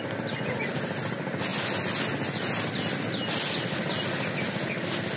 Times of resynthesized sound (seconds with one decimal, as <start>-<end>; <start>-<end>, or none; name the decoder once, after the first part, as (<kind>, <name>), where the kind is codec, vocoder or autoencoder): none